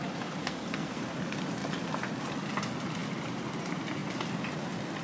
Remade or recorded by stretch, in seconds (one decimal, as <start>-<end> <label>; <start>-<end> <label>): 0.0-0.4 recorded; 0.4-1.0 remade; 1.0-5.0 recorded